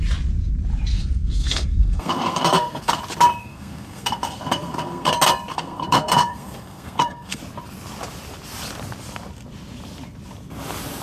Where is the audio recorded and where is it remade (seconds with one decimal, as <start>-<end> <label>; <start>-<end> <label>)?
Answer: 0.0-0.9 recorded; 0.9-3.0 remade; 3.0-3.4 recorded; 3.4-5.1 remade; 5.1-5.5 recorded; 5.5-7.4 remade; 7.4-11.0 recorded